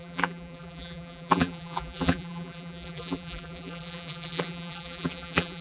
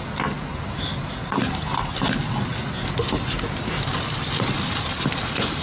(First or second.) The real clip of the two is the second